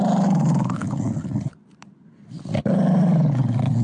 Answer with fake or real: real